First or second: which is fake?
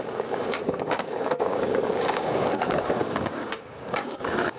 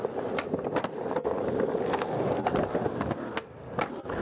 first